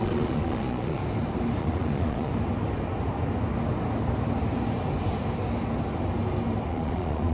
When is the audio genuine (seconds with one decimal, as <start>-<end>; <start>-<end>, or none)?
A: 1.0-1.6; 2.3-6.7